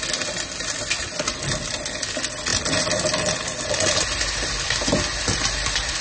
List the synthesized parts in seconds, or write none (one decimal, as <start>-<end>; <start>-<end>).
2.5-6.0

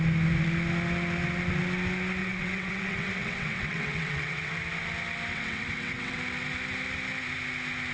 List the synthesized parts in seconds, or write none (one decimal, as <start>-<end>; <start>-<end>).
2.2-4.5; 5.3-6.2

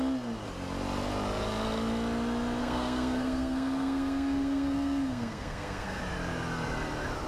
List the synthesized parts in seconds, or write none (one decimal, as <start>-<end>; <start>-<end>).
2.6-6.0

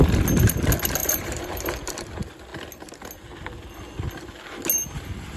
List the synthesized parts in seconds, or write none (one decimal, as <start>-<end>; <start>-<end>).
1.0-1.9

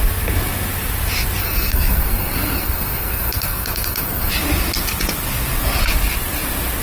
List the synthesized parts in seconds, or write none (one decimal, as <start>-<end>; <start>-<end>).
1.4-4.3

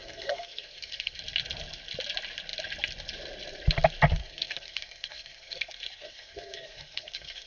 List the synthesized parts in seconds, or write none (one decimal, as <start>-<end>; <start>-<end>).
0.0-1.2; 4.2-7.5

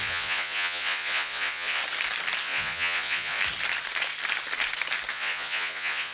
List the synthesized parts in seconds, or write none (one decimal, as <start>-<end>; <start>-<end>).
0.0-1.8; 2.4-3.4; 5.1-6.1

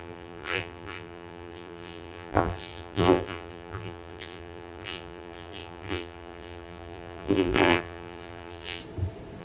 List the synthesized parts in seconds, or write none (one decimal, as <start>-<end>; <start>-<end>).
0.0-8.8